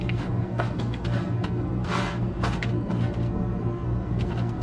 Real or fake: fake